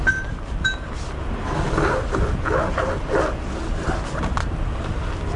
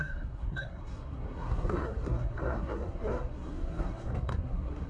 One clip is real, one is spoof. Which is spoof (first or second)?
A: second